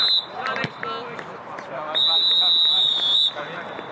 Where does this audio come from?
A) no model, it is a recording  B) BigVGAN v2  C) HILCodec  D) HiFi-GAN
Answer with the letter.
A